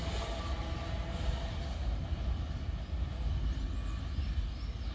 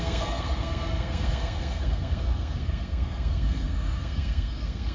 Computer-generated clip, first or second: second